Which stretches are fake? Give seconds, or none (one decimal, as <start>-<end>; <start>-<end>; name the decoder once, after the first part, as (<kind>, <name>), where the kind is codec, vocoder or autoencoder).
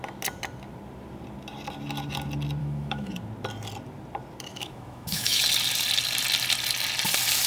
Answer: 2.6-3.1 (autoencoder, DAC-VAE); 4.5-5.4